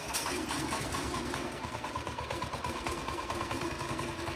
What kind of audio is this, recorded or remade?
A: remade